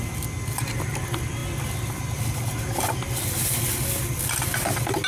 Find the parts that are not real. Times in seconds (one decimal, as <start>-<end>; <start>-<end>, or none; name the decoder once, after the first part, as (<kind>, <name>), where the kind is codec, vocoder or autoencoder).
none